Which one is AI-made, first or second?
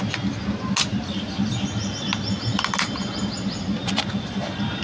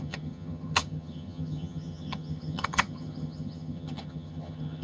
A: second